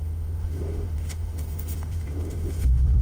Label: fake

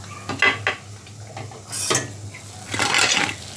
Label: real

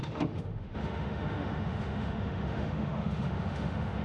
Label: fake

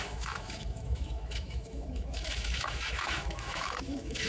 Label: fake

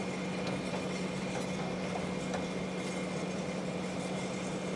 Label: real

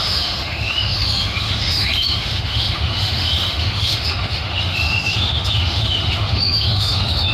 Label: fake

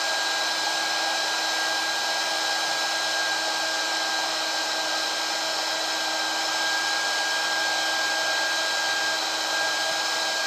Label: real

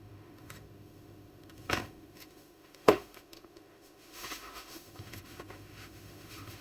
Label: fake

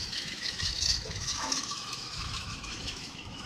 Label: fake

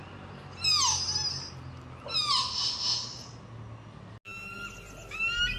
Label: real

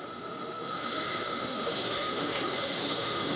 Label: fake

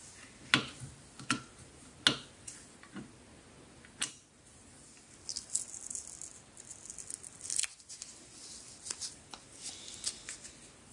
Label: real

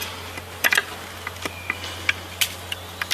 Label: real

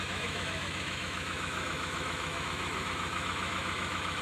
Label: fake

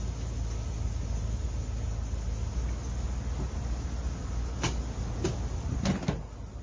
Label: real